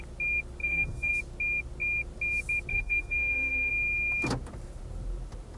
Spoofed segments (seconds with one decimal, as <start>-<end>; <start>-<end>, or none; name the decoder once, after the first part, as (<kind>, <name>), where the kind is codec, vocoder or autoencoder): 0.6-1.1 (codec, SNAC); 2.7-3.7